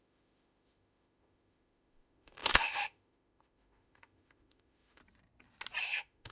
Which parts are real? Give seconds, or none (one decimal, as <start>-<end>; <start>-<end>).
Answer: 5.0-5.8